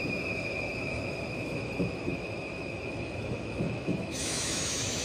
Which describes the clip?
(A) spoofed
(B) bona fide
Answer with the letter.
A